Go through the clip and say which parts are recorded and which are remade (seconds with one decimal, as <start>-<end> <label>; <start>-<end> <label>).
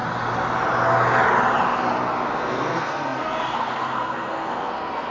0.0-2.3 recorded; 2.3-5.1 remade